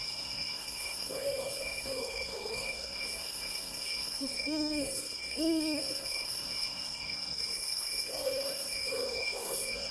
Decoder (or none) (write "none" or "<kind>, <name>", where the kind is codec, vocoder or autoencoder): codec, SNAC